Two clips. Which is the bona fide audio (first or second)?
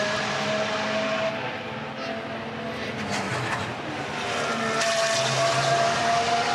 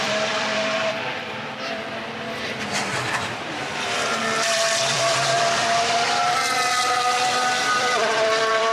first